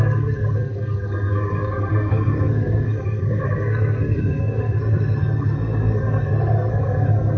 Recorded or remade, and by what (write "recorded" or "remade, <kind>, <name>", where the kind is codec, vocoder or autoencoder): remade, codec, SNAC